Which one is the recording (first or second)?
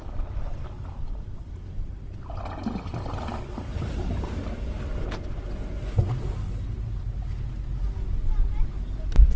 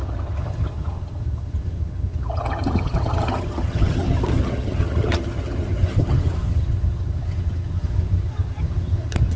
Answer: first